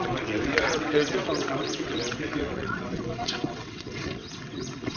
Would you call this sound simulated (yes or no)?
yes